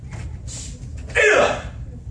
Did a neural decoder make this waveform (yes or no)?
no